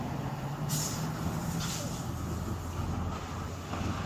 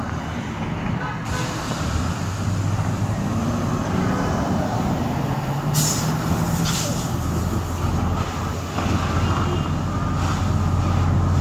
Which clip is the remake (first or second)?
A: first